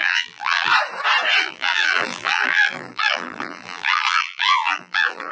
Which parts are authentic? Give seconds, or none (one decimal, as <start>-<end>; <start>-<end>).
0.7-1.4